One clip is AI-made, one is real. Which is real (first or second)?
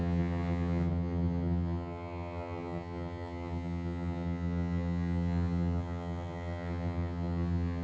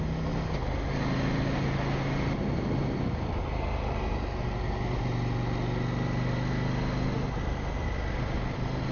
second